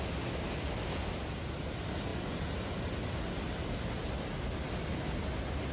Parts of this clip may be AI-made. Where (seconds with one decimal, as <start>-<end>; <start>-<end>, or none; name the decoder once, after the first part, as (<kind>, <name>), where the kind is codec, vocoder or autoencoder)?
none